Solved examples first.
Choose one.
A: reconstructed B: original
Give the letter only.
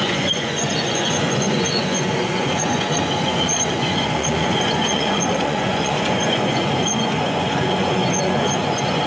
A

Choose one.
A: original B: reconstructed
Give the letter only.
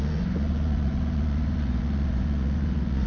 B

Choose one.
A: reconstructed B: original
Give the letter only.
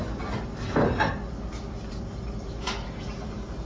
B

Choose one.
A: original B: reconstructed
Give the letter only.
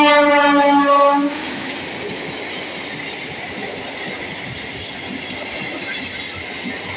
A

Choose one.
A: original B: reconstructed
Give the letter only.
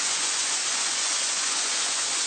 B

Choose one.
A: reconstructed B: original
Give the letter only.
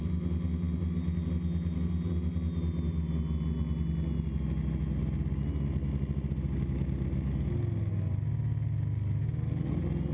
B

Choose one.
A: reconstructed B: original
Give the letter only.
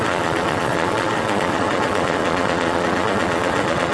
A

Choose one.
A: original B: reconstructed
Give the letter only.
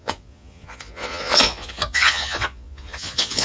B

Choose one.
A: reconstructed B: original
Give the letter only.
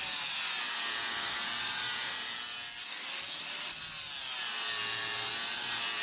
B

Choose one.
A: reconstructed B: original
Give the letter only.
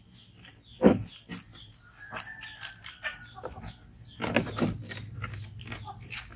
B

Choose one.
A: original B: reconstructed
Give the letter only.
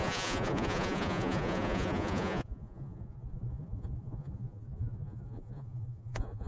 B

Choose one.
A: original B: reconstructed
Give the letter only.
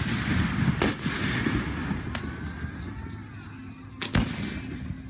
A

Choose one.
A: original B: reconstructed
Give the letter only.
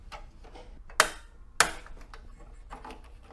A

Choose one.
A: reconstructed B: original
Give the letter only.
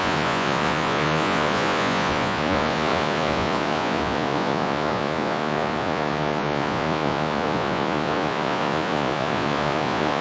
A